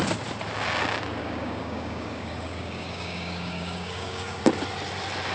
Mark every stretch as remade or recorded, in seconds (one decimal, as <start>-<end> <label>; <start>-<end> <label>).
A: 0.0-1.2 recorded; 1.2-4.4 remade; 4.4-5.3 recorded